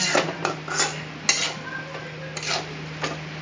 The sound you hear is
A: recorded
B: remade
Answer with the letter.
A